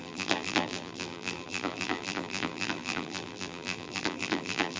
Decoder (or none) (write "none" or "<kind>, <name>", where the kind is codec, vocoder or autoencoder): vocoder, BigVGAN v2